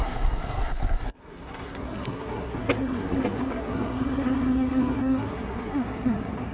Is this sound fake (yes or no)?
yes